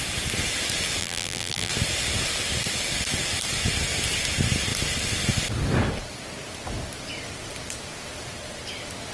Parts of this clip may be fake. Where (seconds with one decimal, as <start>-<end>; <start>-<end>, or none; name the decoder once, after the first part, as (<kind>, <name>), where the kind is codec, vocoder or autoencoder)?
1.0-1.7 (vocoder, BigVGAN v2)